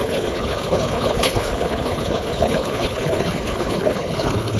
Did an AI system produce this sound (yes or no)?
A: yes